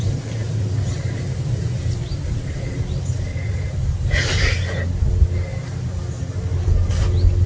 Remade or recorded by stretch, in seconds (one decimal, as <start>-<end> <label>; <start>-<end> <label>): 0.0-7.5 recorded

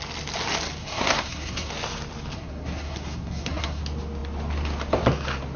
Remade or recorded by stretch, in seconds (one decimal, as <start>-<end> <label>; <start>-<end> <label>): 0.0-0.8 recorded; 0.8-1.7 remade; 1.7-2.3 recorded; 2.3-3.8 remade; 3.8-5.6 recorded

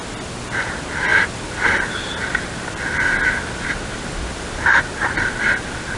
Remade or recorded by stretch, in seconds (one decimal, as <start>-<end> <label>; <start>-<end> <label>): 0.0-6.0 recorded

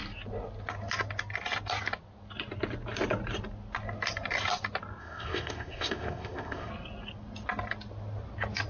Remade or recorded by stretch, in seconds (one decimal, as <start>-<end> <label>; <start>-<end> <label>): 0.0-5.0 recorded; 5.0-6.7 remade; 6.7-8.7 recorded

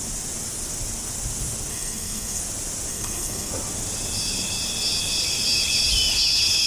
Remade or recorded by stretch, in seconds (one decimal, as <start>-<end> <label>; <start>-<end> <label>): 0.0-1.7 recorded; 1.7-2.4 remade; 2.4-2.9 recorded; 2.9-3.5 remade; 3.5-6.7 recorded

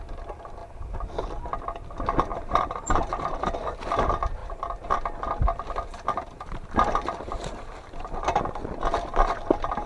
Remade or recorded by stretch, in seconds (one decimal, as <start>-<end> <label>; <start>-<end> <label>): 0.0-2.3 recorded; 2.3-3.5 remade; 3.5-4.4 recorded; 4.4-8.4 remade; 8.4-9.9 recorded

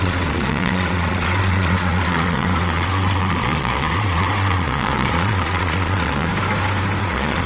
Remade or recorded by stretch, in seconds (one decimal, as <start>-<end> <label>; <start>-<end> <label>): 0.0-6.3 remade; 6.3-7.0 recorded; 7.0-7.5 remade